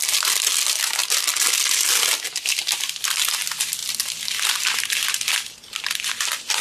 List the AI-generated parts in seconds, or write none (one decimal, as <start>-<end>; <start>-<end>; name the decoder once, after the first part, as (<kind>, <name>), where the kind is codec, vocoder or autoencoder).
0.0-1.0 (vocoder, BigVGAN v2); 3.0-6.6

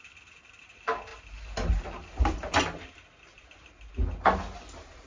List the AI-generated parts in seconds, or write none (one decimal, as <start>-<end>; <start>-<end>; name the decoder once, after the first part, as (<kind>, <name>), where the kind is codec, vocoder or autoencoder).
none

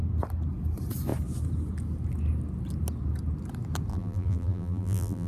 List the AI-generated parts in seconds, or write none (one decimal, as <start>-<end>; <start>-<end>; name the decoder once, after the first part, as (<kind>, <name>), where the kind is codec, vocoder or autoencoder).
3.9-5.3 (vocoder, BigVGAN v2)

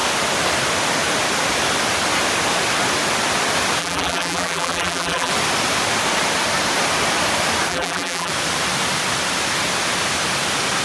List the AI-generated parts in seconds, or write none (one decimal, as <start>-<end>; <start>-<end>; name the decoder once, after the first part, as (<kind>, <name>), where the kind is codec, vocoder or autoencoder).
3.8-5.3 (vocoder, BigVGAN v2); 7.7-8.3